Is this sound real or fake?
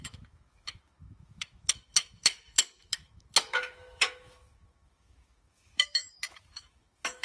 fake